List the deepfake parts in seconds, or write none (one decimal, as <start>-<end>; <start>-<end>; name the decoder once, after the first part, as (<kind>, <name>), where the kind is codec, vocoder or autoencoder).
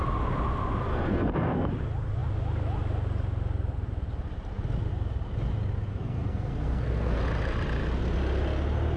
0.9-1.7 (codec, SNAC); 5.9-7.2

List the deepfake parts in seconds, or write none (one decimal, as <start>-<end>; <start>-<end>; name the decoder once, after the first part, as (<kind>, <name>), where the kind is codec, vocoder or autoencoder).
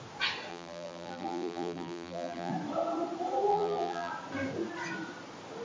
0.5-2.5 (vocoder, BigVGAN v2); 3.5-4.1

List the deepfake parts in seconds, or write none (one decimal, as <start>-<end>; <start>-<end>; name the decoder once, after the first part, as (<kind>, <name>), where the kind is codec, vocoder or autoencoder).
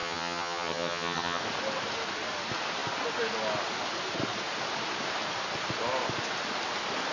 0.0-1.4 (vocoder, HiFi-GAN)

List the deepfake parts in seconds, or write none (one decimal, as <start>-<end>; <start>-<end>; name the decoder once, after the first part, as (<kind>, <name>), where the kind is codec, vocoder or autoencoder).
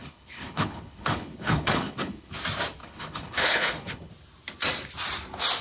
0.0-2.3 (codec, HILCodec); 2.8-4.1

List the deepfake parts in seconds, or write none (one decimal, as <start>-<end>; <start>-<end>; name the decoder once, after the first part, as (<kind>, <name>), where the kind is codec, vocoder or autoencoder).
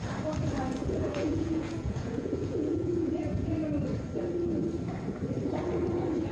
0.8-3.5 (vocoder, Vocos)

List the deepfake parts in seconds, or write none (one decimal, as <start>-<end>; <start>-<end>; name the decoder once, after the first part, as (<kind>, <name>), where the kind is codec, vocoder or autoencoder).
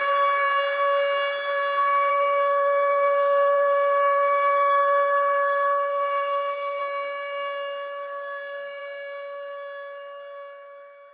2.1-6.8 (codec, SNAC)